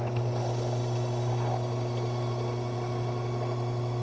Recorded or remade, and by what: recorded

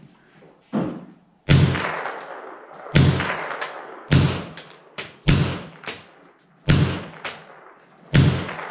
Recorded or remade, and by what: recorded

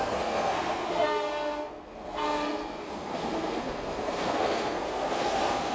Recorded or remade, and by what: remade, codec, SNAC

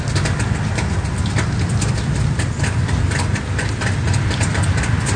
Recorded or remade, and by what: recorded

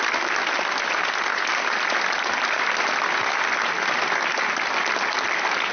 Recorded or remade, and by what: recorded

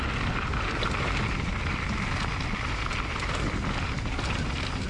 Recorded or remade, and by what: recorded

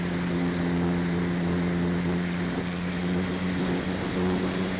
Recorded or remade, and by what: recorded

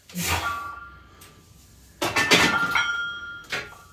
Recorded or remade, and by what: recorded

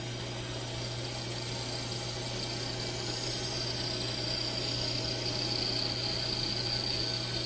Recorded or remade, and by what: recorded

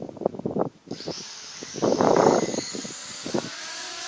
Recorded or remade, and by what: remade, codec, DAC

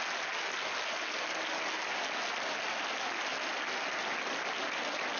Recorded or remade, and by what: recorded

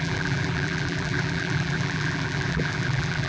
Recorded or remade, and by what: remade, vocoder, BigVGAN v2